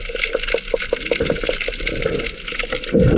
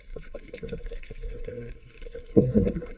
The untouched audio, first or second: first